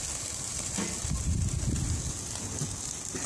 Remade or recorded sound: recorded